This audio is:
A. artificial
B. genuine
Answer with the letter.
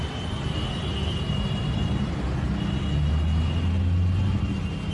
B